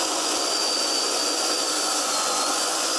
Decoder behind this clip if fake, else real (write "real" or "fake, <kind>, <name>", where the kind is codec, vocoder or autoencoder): fake, vocoder, Vocos